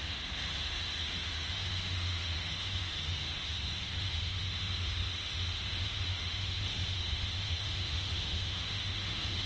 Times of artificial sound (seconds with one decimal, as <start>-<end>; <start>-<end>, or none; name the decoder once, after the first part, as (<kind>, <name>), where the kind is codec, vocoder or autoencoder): 0.0-9.5 (autoencoder, DAC-VAE)

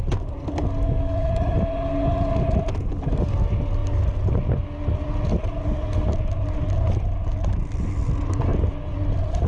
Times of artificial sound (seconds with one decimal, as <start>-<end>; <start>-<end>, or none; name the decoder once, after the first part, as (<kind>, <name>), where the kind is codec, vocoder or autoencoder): none

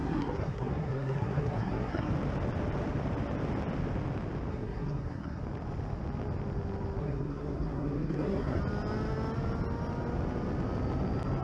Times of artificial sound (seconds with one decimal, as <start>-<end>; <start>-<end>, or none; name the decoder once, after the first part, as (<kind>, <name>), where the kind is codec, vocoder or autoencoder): 0.0-2.1 (codec, SNAC); 4.5-5.4; 7.0-8.6

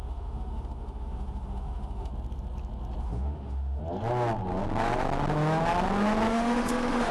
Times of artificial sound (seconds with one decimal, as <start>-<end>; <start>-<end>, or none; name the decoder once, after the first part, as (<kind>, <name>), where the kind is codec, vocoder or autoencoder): 0.0-2.1 (autoencoder, DAC-VAE); 3.0-3.8; 6.3-7.1

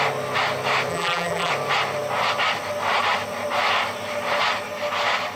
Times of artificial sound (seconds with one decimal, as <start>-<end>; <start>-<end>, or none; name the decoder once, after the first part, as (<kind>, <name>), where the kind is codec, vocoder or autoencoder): 0.9-1.5 (vocoder, BigVGAN v2)

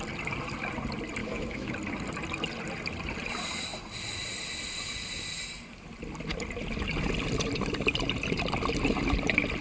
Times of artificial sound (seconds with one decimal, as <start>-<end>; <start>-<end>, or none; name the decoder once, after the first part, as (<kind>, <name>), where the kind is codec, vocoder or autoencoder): 1.2-1.7 (autoencoder, DAC-VAE)